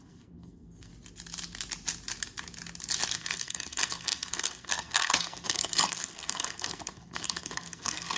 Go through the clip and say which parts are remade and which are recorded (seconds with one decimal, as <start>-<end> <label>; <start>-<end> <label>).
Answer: 0.0-0.9 remade; 0.9-3.1 recorded; 3.1-8.2 remade